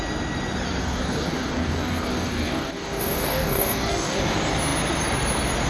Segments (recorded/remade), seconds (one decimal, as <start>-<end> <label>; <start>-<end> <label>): 0.0-0.8 recorded; 0.8-4.2 remade; 4.2-5.7 recorded